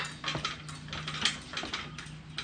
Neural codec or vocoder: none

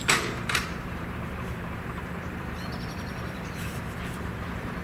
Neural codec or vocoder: vocoder, BigVGAN v2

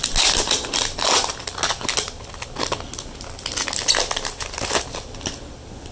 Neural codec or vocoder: none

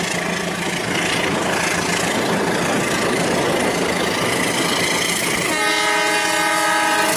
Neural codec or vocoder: none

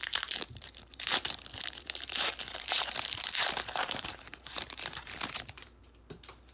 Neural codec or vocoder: vocoder, BigVGAN v2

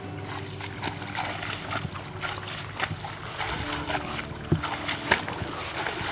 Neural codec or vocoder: none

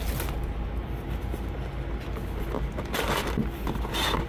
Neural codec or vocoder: none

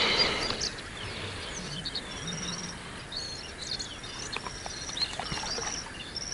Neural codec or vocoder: vocoder, BigVGAN v2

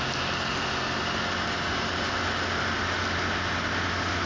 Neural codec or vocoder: none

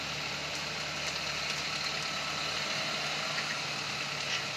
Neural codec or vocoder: none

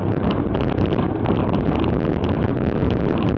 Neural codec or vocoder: vocoder, BigVGAN v2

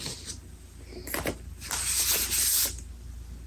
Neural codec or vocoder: none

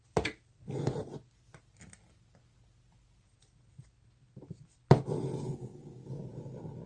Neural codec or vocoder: none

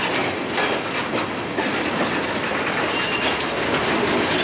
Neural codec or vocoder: vocoder, BigVGAN v2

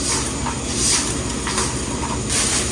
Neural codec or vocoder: vocoder, BigVGAN v2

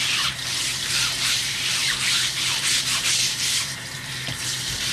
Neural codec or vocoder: vocoder, BigVGAN v2